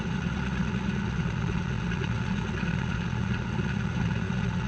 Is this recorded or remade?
remade